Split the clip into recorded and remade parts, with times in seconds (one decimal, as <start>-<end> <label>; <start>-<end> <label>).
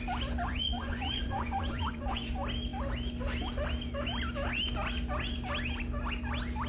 0.0-0.5 recorded; 0.5-2.3 remade; 2.3-6.7 recorded